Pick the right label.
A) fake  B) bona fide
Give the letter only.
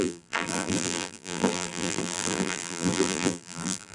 A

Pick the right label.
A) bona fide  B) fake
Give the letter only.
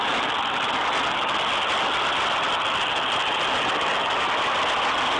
A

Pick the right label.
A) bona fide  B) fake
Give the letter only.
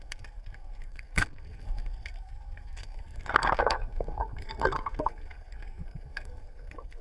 B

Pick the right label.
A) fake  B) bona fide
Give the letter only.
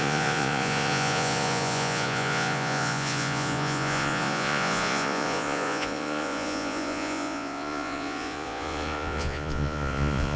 A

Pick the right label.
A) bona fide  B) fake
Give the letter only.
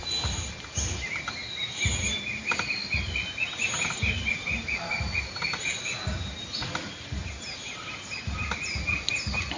A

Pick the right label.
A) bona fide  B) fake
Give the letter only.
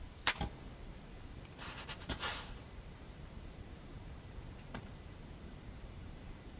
B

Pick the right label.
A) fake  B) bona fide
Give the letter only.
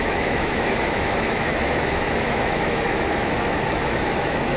A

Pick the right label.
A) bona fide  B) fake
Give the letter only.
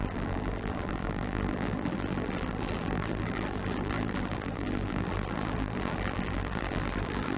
B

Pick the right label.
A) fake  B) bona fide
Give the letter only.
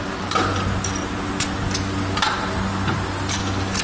B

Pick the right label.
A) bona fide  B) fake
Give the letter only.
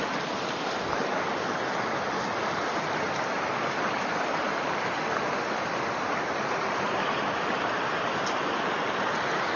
A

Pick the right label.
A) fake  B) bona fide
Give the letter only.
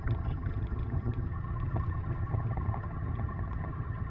A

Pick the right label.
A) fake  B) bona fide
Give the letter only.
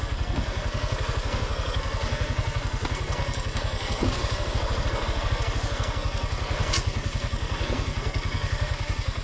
A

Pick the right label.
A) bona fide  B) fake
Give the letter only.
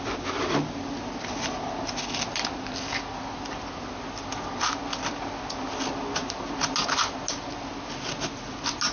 A